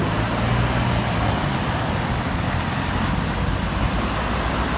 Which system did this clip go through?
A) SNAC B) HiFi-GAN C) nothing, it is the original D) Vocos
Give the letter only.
C